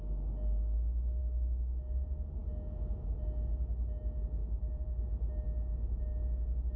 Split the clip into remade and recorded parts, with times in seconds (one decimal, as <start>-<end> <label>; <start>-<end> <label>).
0.0-4.4 recorded; 4.4-5.0 remade; 5.0-6.8 recorded